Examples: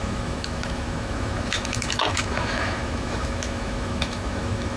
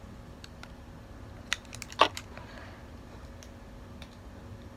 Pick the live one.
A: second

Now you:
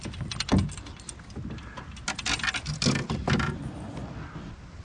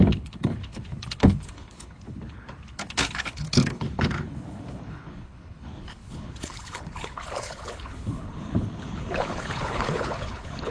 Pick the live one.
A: first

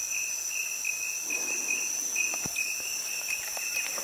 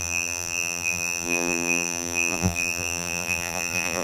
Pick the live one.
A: first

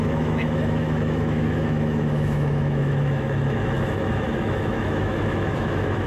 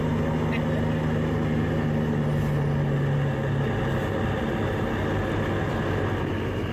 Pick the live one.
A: second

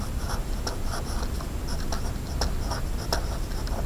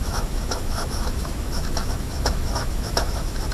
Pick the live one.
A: first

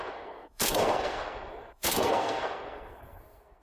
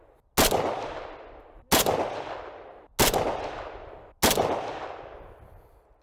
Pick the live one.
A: second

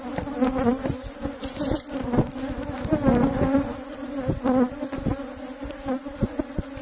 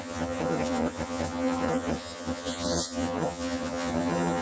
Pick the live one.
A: first